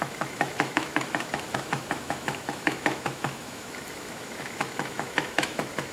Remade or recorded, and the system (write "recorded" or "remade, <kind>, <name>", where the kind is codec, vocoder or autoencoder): remade, autoencoder, DAC-VAE